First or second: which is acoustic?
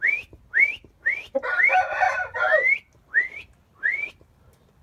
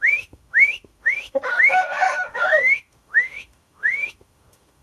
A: first